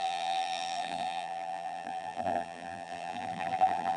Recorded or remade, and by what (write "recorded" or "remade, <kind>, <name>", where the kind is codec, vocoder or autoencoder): remade, vocoder, BigVGAN v2